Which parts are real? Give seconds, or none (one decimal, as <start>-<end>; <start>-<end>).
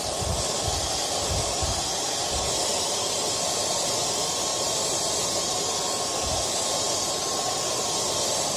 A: 0.0-7.2; 7.9-8.6